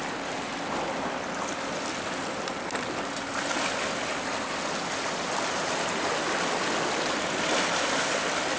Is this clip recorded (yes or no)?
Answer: yes